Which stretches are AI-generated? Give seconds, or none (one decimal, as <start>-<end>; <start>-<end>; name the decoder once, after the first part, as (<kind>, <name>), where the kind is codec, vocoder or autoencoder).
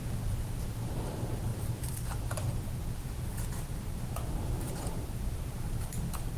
0.7-6.4 (vocoder, BigVGAN v2)